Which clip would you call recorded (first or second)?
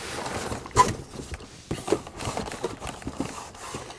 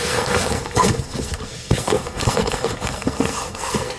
first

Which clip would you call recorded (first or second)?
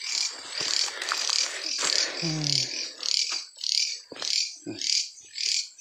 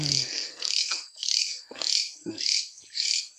first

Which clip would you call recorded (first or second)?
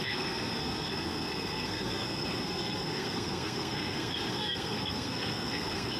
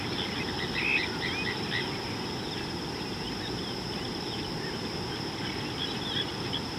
second